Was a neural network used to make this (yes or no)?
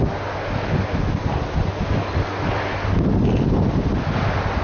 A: no